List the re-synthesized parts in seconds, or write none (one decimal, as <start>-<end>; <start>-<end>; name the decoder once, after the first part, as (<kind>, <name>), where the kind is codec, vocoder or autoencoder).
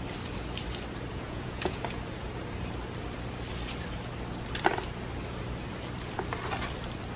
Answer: 1.1-1.8 (vocoder, Vocos)